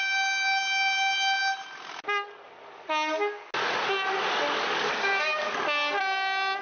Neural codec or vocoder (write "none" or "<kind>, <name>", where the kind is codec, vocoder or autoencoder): none